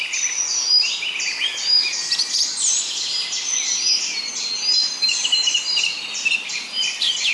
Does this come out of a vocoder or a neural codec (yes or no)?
no